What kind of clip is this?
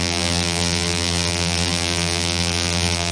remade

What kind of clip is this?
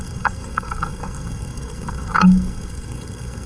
remade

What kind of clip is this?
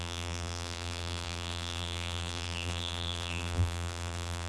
remade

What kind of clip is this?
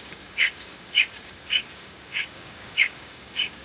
remade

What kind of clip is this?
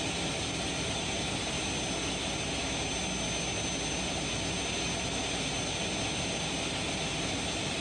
recorded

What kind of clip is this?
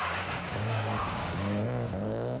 remade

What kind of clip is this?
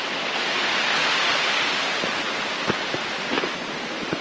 recorded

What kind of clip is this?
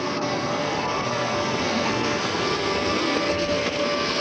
remade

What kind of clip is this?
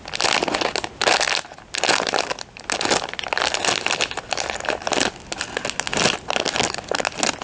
recorded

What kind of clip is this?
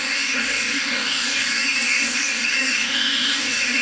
remade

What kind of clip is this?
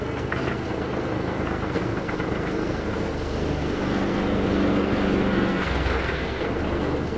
remade